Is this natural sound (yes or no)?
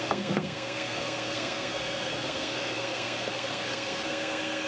no